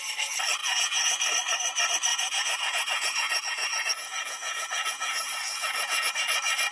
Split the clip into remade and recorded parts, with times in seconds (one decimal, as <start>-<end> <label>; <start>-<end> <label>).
0.0-0.6 recorded; 0.6-1.2 remade; 1.2-2.1 recorded; 2.1-6.1 remade; 6.1-6.7 recorded